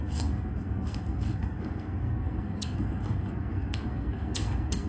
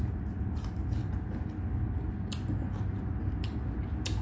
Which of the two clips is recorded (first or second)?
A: second